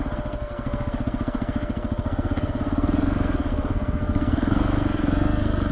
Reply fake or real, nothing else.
fake